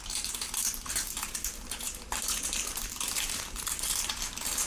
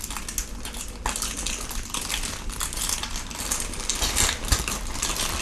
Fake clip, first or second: first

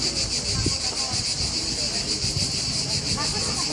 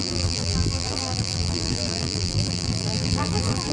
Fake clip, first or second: second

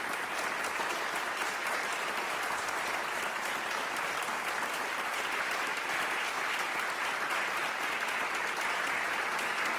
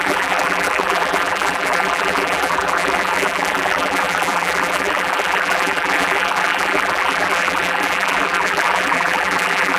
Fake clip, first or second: second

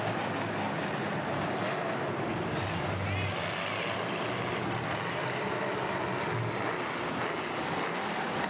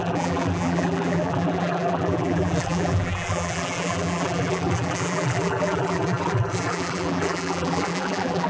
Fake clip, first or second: second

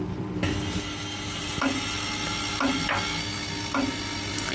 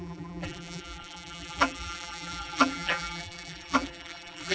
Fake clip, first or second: second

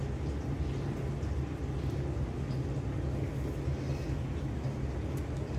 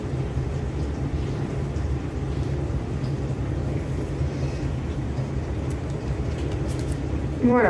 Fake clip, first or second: second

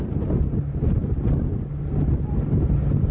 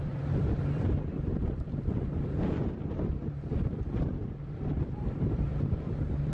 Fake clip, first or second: second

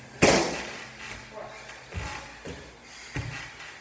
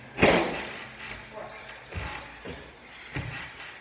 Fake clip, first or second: second